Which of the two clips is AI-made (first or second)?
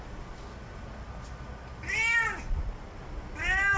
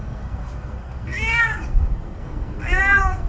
second